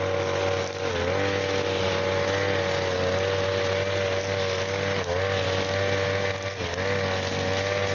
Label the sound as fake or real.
real